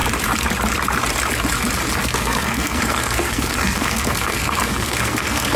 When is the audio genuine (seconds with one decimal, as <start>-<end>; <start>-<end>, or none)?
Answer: 0.0-2.0